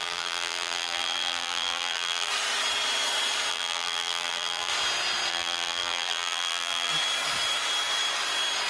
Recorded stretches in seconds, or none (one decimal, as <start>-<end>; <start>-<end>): 2.3-3.5; 4.7-5.3; 6.9-8.7